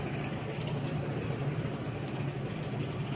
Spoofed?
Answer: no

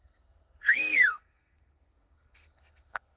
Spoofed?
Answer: yes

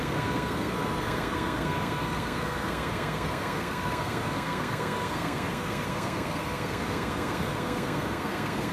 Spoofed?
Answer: yes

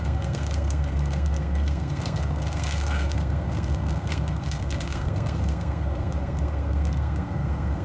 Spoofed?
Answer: yes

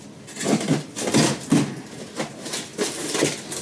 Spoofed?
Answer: no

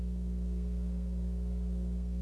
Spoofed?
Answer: yes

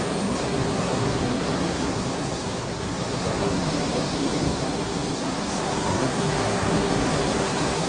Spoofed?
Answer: yes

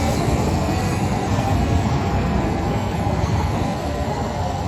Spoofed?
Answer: yes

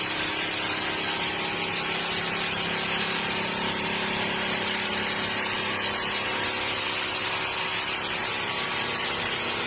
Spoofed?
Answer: no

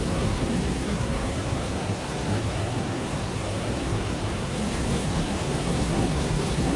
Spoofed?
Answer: yes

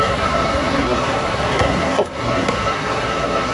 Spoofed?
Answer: yes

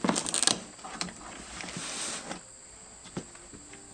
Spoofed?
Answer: no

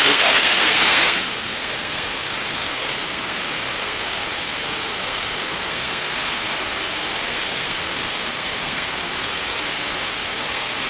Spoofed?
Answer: yes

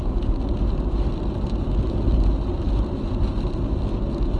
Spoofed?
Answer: no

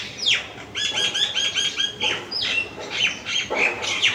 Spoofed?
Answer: no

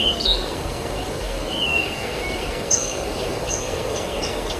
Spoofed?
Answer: yes